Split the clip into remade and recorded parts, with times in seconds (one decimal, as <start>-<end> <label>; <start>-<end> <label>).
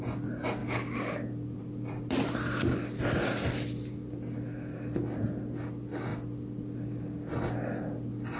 0.0-8.4 recorded